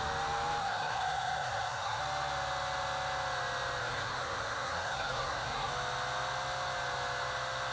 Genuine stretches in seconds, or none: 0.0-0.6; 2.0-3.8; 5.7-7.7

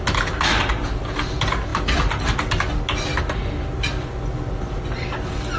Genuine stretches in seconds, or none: 0.0-5.6